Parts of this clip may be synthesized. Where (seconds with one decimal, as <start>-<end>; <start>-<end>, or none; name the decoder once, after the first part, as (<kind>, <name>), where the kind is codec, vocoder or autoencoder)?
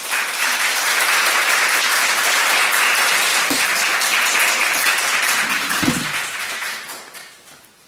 0.0-3.3 (vocoder, BigVGAN v2); 4.3-7.9